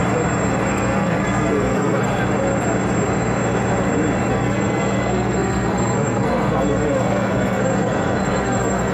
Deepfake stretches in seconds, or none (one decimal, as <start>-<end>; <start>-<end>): 0.7-2.1; 4.3-8.9